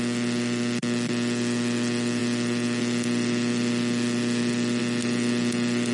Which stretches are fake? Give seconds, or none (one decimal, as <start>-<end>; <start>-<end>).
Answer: none